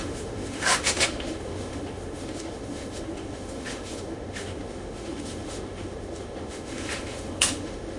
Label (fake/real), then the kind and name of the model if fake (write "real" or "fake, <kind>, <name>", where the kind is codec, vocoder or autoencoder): fake, autoencoder, DAC-VAE